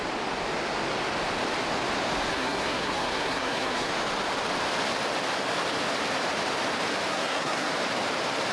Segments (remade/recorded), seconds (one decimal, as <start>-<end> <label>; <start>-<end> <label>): 0.0-2.3 recorded; 2.3-3.9 remade; 3.9-7.1 recorded; 7.1-7.7 remade; 7.7-8.5 recorded